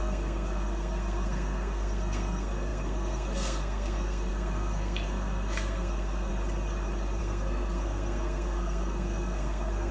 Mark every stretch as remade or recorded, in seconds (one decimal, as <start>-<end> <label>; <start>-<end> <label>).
0.0-6.3 remade; 6.3-7.2 recorded; 7.2-9.9 remade